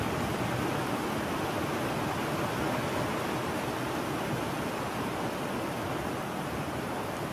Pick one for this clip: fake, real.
real